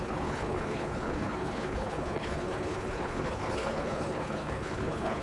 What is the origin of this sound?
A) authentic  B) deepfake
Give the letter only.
B